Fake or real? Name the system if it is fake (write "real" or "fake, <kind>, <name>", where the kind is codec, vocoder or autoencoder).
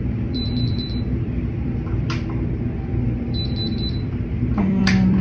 fake, vocoder, BigVGAN v2